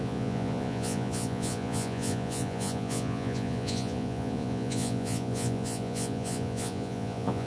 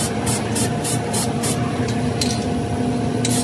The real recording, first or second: second